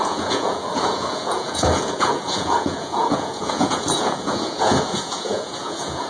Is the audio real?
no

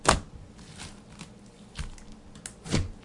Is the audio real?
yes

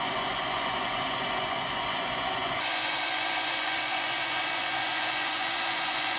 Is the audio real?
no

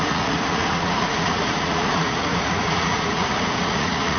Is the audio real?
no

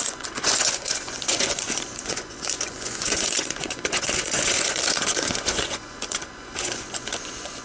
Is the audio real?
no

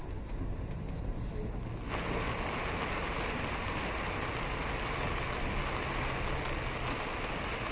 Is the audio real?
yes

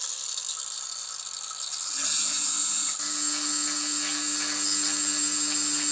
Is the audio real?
yes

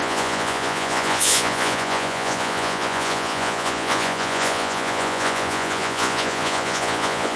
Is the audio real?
no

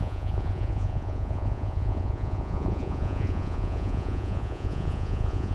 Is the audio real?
no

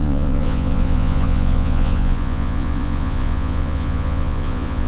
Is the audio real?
no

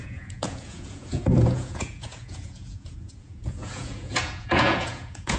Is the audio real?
no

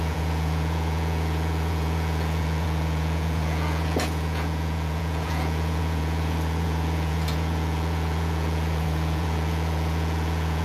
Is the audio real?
no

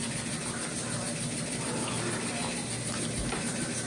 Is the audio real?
yes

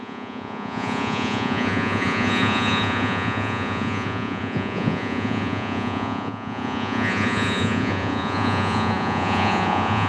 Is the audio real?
no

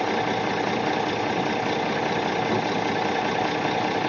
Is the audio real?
yes